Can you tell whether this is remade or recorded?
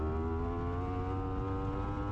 recorded